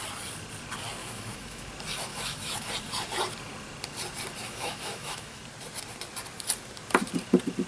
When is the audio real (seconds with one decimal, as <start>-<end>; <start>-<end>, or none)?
0.0-1.0; 1.7-2.1; 2.7-4.4; 5.4-7.7